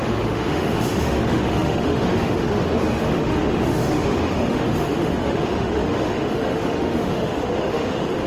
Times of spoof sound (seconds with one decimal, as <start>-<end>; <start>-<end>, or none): 0.0-8.3